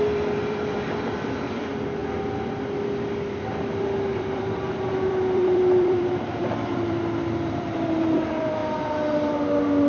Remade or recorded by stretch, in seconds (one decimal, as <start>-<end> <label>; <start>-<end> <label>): 0.0-2.0 remade; 2.0-4.1 recorded; 4.1-8.6 remade; 8.6-9.9 recorded